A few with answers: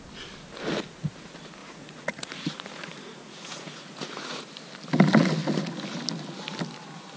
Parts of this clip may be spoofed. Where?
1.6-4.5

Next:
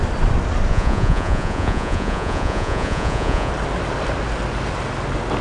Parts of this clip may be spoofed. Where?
0.7-3.5

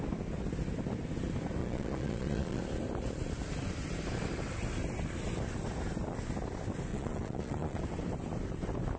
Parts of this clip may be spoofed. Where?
1.6-2.6; 6.9-7.8

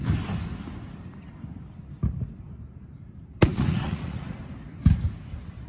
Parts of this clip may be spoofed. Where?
3.5-4.4

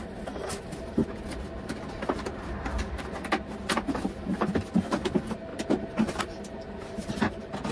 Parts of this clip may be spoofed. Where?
none

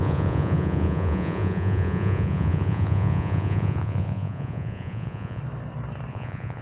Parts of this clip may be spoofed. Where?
0.0-5.4; 6.1-6.6

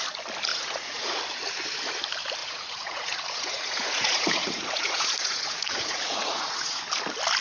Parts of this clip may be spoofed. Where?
0.5-1.2; 2.4-6.8

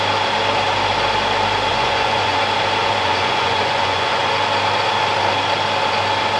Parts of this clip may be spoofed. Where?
1.7-2.4; 2.8-4.3